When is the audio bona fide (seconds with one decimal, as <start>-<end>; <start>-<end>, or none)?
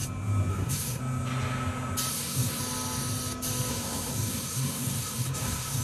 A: 0.0-0.5; 1.0-2.1; 2.6-3.7